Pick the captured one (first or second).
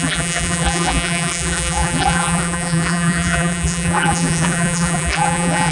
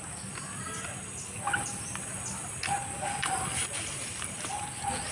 second